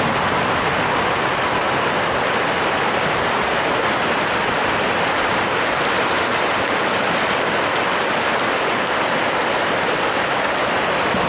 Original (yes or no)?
yes